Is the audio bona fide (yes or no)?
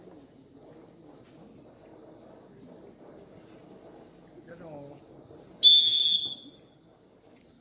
yes